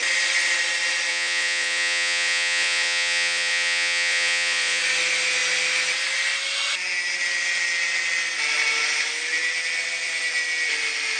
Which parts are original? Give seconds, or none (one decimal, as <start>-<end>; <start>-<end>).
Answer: 0.0-1.1; 4.8-11.2